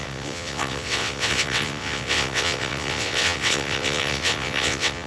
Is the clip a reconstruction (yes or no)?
yes